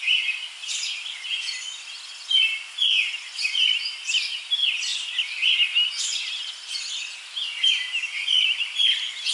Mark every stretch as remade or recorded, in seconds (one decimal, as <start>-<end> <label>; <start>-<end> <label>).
0.0-9.3 recorded